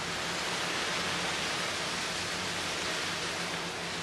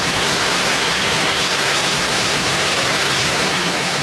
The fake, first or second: second